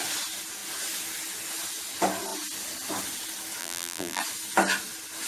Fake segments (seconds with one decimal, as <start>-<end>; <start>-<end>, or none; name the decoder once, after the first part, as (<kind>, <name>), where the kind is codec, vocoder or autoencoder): 3.6-4.2 (vocoder, BigVGAN v2)